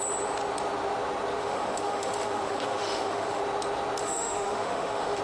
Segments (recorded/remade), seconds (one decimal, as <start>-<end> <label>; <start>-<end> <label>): 0.0-1.4 recorded; 1.4-3.4 remade; 3.4-4.0 recorded; 4.0-5.2 remade